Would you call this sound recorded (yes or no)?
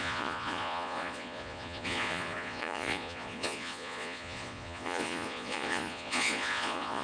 no